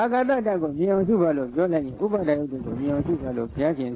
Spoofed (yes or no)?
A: no